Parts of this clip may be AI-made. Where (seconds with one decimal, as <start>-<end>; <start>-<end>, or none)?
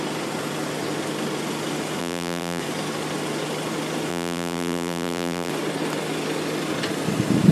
2.0-2.6; 4.1-5.5